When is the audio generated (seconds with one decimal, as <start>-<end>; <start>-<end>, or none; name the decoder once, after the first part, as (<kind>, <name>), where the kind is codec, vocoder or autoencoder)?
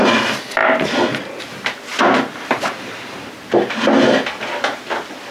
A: none